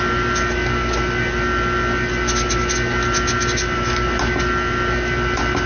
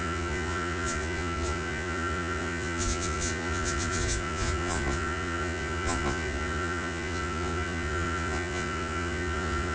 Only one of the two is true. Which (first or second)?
first